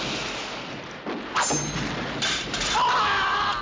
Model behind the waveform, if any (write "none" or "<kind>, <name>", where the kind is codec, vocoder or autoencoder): none